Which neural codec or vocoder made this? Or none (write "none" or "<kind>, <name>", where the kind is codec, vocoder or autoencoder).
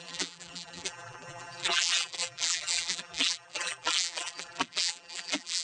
vocoder, BigVGAN v2